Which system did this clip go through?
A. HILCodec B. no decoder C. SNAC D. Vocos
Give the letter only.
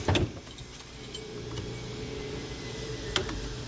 B